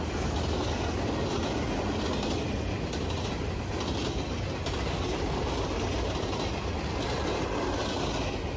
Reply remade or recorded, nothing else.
recorded